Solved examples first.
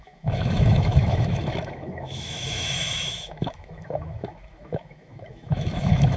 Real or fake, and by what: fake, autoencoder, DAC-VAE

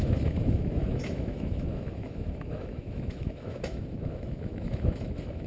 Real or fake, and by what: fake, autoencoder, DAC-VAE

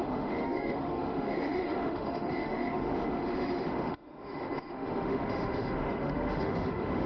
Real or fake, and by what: fake, autoencoder, DAC-VAE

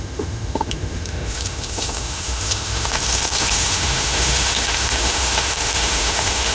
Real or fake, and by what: fake, autoencoder, DAC-VAE